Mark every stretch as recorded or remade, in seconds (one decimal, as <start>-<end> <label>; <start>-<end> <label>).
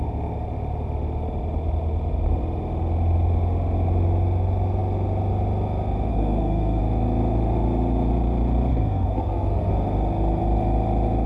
0.0-6.1 recorded; 6.1-6.8 remade; 6.8-8.7 recorded; 8.7-9.7 remade; 9.7-11.3 recorded